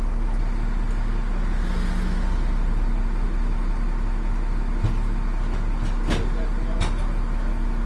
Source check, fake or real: real